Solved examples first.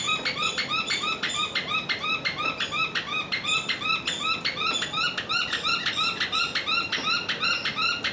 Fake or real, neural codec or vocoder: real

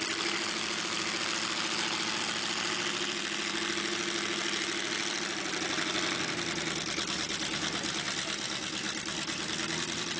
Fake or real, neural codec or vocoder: real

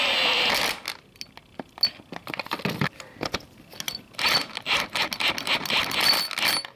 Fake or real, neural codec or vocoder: real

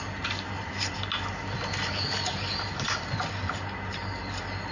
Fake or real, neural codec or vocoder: real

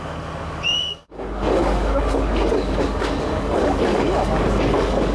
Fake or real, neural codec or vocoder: fake, codec, DAC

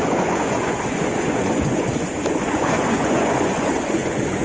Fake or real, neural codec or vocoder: fake, vocoder, Vocos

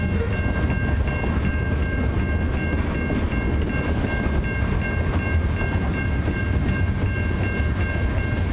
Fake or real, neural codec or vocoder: real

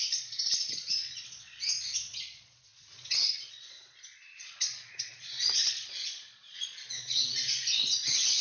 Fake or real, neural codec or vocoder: fake, vocoder, Vocos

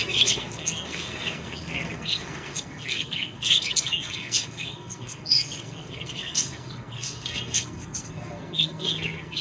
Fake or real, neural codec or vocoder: fake, codec, SNAC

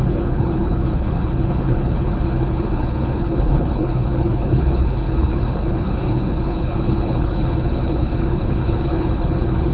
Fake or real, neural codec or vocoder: fake, codec, HILCodec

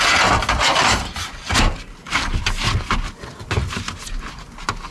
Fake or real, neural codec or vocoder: real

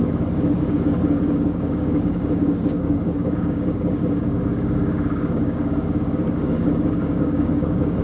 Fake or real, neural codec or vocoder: fake, codec, DAC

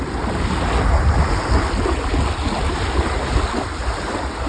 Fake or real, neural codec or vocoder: real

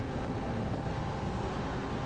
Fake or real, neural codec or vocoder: real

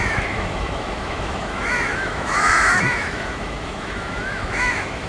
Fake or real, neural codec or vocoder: fake, autoencoder, DAC-VAE